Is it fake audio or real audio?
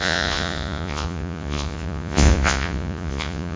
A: fake